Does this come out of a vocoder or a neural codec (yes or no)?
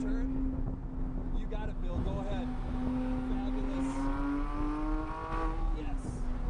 no